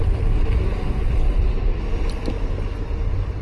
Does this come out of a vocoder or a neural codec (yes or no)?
no